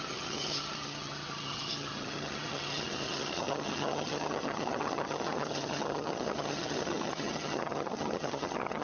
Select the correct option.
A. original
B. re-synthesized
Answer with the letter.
B